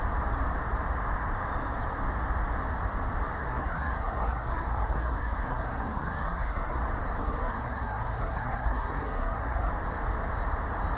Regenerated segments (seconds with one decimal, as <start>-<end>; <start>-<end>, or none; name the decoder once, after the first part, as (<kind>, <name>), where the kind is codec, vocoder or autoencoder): 3.4-6.8 (codec, SNAC); 7.2-9.7